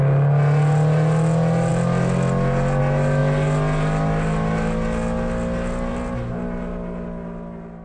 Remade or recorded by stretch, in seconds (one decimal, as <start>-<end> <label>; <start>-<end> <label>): 0.0-7.8 recorded